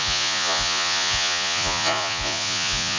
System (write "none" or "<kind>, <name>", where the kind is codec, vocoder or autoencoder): vocoder, Vocos